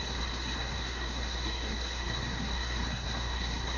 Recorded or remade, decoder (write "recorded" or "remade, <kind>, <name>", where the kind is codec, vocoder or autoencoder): remade, codec, SNAC